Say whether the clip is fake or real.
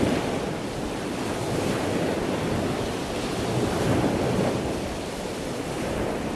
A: real